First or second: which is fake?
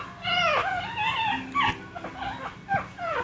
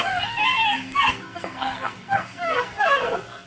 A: second